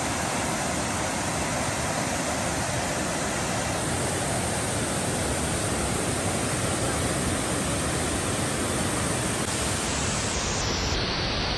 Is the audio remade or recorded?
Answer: recorded